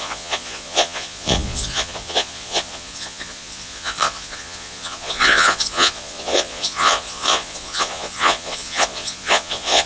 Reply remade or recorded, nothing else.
remade